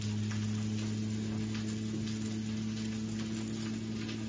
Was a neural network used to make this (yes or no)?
no